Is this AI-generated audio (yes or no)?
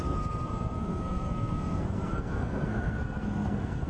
yes